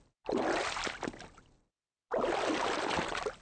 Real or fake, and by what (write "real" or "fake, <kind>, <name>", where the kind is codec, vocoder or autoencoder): real